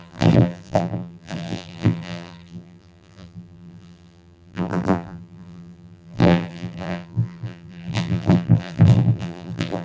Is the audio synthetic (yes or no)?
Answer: yes